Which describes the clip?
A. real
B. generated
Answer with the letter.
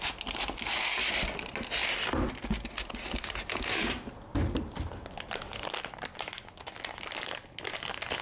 A